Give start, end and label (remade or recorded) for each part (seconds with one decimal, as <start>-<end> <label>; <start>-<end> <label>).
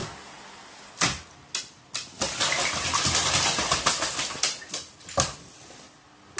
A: 0.0-6.4 recorded